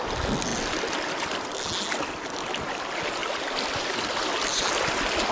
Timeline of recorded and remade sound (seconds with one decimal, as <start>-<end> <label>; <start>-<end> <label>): 0.0-3.2 recorded; 3.2-3.9 remade; 3.9-5.3 recorded